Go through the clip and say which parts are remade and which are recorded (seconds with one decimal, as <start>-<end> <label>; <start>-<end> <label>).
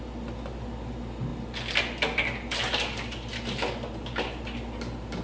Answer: 0.0-5.2 recorded